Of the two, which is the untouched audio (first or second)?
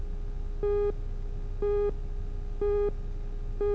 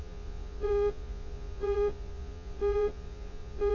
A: first